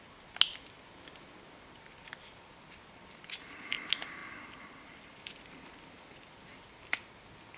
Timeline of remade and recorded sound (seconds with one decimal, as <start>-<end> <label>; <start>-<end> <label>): 0.0-7.6 recorded